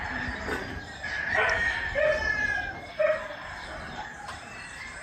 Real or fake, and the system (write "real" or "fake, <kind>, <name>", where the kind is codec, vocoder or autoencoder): real